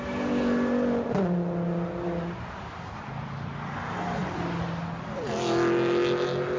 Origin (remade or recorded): recorded